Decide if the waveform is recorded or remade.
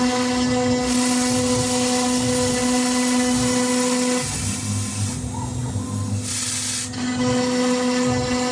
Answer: recorded